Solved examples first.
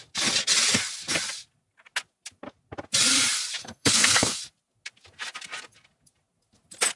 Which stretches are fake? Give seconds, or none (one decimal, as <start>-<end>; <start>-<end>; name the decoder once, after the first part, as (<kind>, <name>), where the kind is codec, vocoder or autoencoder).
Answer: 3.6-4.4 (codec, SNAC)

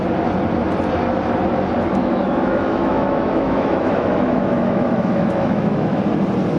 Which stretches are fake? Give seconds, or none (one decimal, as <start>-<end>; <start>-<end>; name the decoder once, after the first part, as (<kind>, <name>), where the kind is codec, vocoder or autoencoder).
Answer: 2.0-6.0 (autoencoder, DAC-VAE)

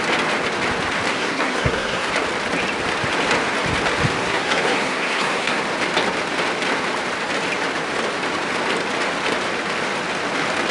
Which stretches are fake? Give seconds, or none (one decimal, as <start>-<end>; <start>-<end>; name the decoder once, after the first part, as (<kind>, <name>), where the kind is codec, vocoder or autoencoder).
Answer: 1.1-2.1 (codec, SNAC); 4.2-5.6